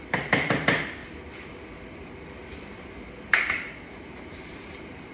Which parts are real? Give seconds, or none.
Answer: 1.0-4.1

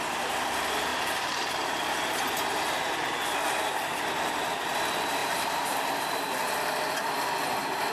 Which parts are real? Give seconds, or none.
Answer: 0.0-0.9; 1.5-5.2; 6.5-7.9